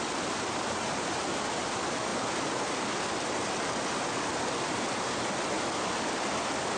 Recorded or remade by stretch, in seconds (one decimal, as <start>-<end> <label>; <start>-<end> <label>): 0.0-6.8 recorded